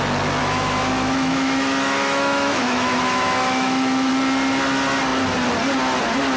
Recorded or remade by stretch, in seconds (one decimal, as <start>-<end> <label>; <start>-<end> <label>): 0.0-0.4 recorded; 0.4-4.1 remade; 4.1-6.4 recorded